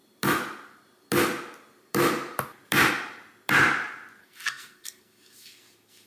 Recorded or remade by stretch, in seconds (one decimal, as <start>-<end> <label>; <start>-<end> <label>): 0.0-4.2 recorded; 4.2-6.1 remade